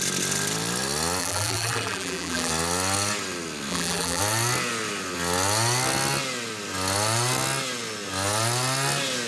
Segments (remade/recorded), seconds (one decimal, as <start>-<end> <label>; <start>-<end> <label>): 0.0-1.2 recorded; 1.2-2.5 remade; 2.5-3.7 recorded; 3.7-4.2 remade; 4.2-9.3 recorded